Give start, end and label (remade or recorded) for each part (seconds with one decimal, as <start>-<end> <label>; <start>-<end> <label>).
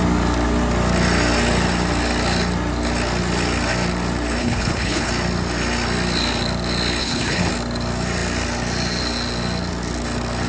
0.0-4.4 recorded; 4.4-5.1 remade; 5.1-7.0 recorded; 7.0-7.5 remade; 7.5-10.5 recorded